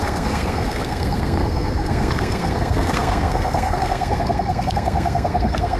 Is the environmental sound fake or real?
fake